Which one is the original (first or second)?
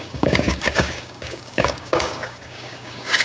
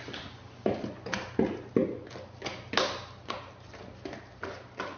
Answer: second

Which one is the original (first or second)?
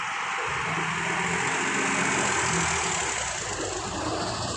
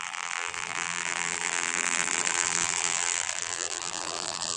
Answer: first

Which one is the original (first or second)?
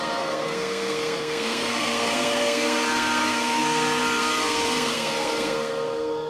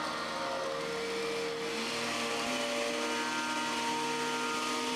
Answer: second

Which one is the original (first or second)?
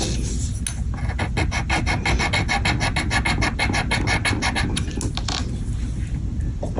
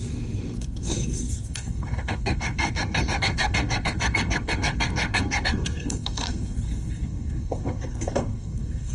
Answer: first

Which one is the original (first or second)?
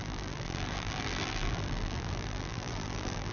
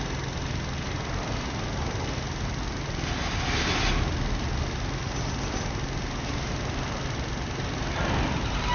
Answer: second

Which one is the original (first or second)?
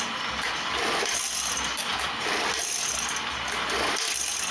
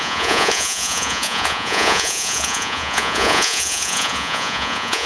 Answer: first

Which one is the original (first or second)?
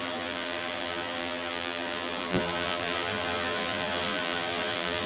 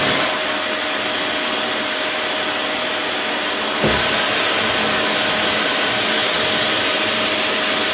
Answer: second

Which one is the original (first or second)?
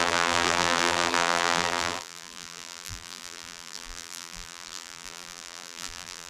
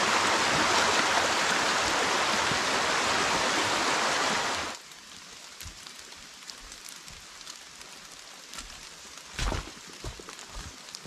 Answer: second